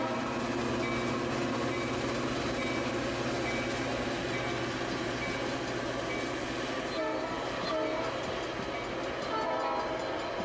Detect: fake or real real